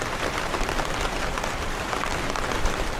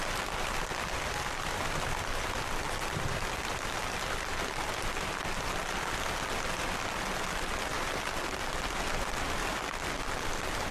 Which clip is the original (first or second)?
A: second